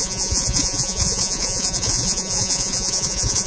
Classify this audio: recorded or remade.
remade